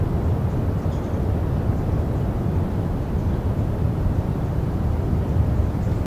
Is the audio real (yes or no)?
no